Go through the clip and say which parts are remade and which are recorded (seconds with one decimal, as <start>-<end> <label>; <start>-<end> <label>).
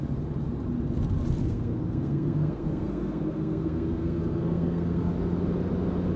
0.0-1.4 recorded; 1.4-5.1 remade; 5.1-6.2 recorded